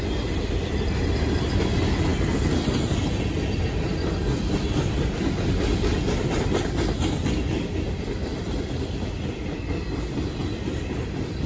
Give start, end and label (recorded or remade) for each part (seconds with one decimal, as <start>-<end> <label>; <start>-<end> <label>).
0.0-2.1 remade; 2.1-4.9 recorded; 4.9-11.5 remade

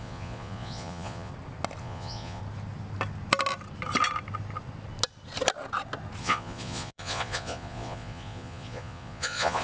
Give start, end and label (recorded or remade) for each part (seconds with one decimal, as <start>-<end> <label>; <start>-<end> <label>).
0.0-1.3 remade; 1.3-1.8 recorded; 1.8-2.4 remade; 2.4-6.2 recorded; 6.2-9.6 remade